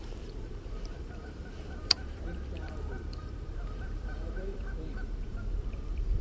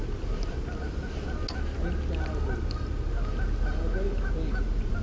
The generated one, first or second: first